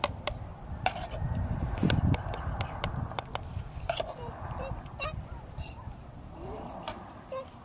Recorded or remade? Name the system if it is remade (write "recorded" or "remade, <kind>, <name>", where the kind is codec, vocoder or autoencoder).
remade, vocoder, BigVGAN v2